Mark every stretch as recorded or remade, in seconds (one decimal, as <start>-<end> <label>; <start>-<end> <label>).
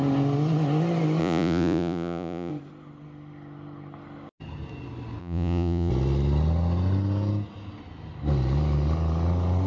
0.0-1.2 recorded; 1.2-2.5 remade; 2.5-5.2 recorded; 5.2-5.9 remade; 5.9-9.7 recorded